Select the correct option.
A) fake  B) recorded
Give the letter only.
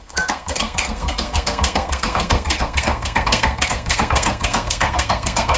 A